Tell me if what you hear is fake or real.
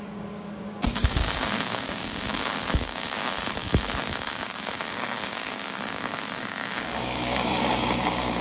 fake